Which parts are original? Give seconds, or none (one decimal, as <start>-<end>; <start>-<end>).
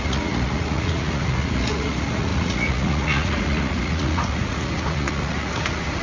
none